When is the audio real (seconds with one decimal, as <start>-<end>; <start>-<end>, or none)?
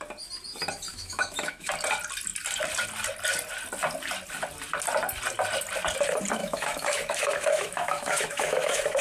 0.0-0.9; 1.7-6.4